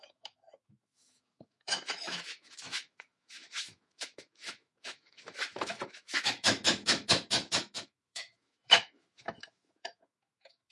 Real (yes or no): no